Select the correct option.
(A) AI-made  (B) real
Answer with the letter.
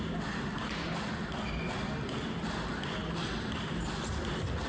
B